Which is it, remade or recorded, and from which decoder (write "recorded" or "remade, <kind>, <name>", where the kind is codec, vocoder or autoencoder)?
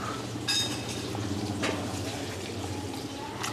recorded